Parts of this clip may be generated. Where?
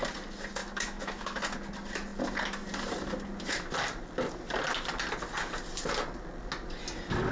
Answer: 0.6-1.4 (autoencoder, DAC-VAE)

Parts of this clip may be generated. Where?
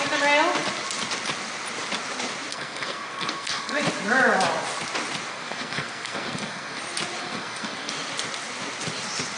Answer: 2.5-3.8 (codec, SNAC); 5.3-6.8; 7.2-7.9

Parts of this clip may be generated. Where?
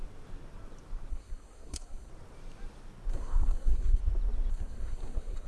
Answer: 1.1-2.1 (codec, SNAC); 3.1-4.0; 4.5-5.5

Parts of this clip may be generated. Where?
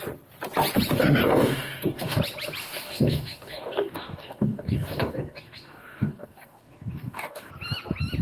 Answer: 1.2-2.2 (codec, DAC); 2.6-7.5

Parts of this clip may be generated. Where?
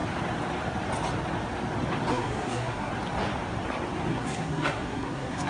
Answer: 2.1-2.9 (codec, SNAC); 4.1-5.5